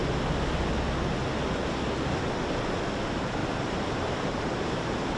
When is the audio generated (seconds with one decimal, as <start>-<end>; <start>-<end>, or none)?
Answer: 3.4-5.2